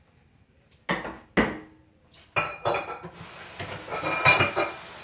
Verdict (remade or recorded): recorded